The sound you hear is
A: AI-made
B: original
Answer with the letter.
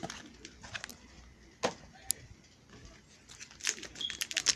B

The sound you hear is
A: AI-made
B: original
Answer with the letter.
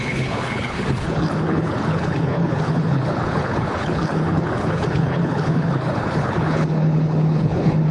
A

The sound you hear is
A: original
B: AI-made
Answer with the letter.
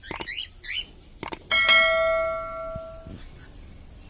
A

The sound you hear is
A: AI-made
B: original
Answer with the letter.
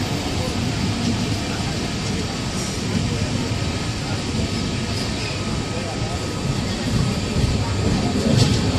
B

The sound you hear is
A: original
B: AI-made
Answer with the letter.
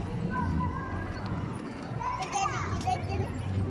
B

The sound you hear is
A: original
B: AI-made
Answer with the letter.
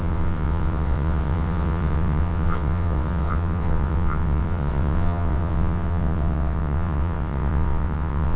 B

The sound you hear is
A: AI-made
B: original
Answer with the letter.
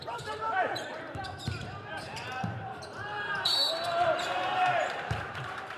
A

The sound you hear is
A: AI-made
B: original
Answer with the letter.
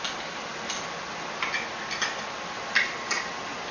B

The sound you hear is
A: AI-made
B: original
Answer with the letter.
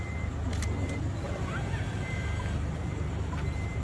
A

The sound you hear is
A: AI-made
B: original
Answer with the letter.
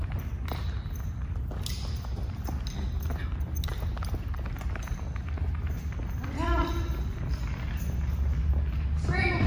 B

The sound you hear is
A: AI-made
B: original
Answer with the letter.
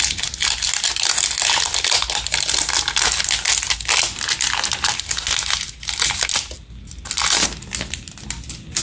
B